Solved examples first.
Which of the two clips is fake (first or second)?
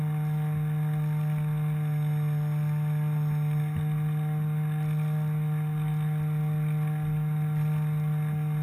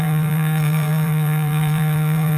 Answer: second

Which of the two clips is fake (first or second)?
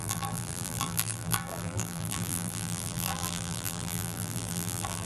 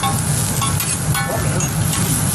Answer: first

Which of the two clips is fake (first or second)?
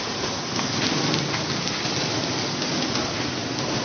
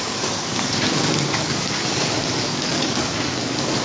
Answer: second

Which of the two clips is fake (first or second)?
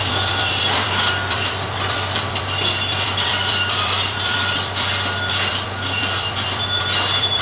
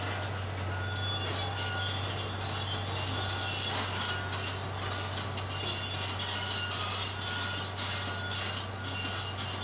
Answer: first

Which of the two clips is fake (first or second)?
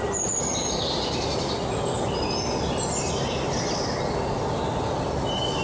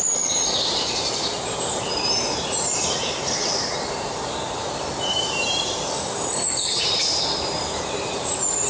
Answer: second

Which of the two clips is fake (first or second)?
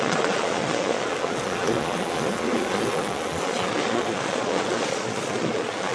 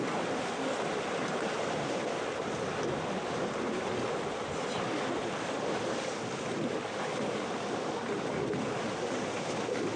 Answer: first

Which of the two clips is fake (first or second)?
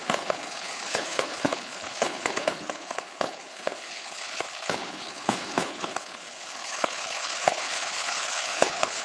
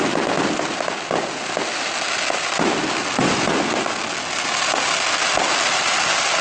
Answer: first